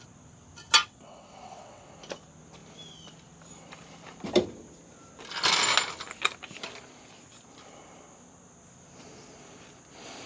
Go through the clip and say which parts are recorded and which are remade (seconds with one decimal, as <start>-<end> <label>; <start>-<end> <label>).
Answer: 0.0-0.8 recorded; 0.8-1.9 remade; 1.9-10.3 recorded